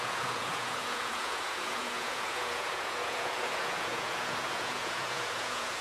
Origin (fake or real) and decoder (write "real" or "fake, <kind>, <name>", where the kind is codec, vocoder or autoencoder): fake, vocoder, Vocos